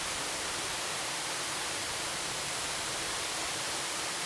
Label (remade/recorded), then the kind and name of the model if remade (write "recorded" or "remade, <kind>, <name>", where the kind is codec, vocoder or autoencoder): remade, vocoder, BigVGAN v2